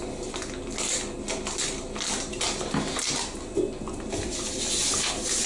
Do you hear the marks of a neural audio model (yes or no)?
no